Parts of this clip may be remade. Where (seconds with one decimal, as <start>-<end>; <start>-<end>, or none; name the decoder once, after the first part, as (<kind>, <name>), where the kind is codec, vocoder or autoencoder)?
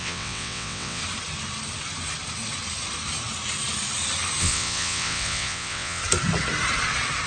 0.0-1.0 (vocoder, WaveNeXt); 4.4-6.0